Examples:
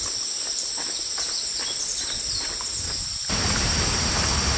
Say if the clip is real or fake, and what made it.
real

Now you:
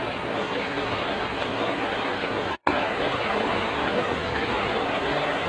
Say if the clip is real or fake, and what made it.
fake, codec, SNAC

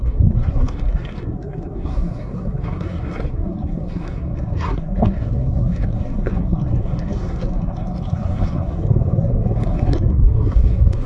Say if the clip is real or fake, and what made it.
fake, codec, SNAC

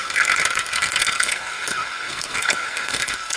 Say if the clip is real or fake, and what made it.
fake, codec, SNAC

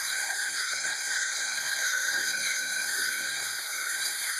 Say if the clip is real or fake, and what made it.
fake, codec, SNAC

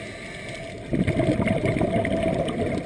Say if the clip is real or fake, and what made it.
real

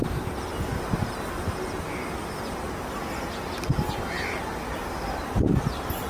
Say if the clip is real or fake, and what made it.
real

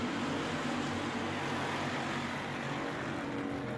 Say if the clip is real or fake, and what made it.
real